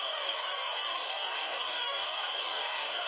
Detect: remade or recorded remade